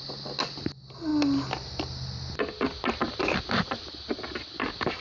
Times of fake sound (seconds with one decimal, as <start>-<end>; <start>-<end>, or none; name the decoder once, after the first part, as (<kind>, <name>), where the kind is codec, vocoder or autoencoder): none